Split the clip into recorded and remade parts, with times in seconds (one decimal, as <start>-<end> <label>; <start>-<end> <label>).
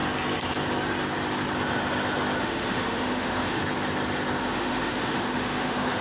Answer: 0.0-2.4 recorded; 2.4-3.6 remade; 3.6-4.4 recorded; 4.4-6.0 remade